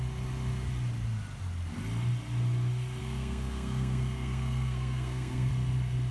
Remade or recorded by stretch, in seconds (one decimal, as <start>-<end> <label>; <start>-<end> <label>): 0.0-3.0 recorded; 3.0-5.5 remade; 5.5-6.1 recorded